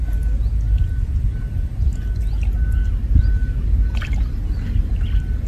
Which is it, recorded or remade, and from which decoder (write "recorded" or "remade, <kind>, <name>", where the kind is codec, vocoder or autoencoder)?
recorded